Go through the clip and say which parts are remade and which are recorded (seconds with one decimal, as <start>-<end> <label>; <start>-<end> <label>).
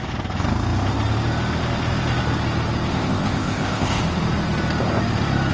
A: 0.0-2.9 recorded; 2.9-4.0 remade; 4.0-5.5 recorded